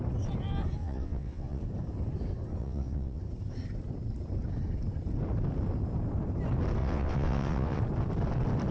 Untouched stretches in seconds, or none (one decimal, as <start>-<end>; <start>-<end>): 0.0-0.8; 1.6-2.6; 3.2-6.8; 7.8-8.7